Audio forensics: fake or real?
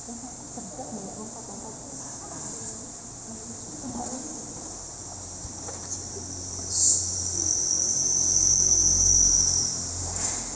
real